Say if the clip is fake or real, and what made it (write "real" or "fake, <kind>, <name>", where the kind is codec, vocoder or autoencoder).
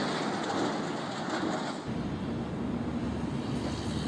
real